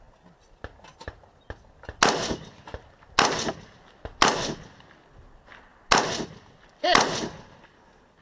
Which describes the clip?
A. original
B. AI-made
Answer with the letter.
A